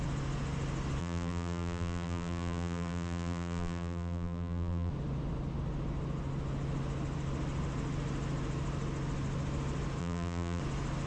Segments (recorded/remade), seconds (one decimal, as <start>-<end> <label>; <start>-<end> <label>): 0.0-1.0 recorded; 1.0-4.9 remade; 4.9-10.0 recorded; 10.0-10.6 remade; 10.6-11.1 recorded